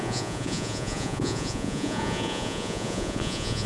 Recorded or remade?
remade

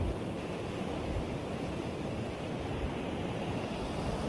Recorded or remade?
recorded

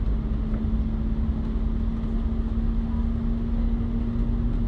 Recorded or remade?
recorded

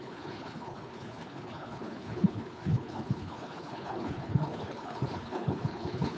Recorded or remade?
remade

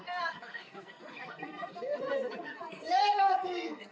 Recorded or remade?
remade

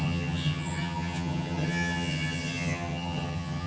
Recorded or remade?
remade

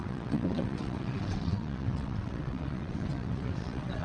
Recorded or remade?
remade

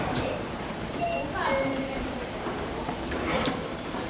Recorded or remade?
remade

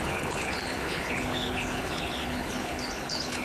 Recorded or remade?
remade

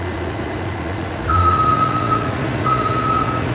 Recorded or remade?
remade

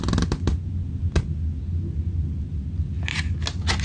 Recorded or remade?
recorded